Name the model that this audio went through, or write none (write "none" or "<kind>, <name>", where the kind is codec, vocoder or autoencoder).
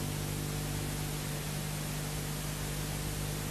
none